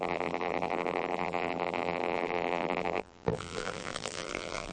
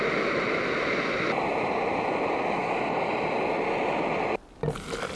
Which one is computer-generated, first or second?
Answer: first